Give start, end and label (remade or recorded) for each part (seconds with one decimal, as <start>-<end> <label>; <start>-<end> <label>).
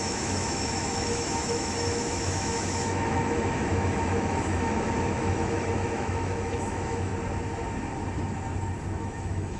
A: 0.0-7.1 remade; 7.1-9.0 recorded; 9.0-9.6 remade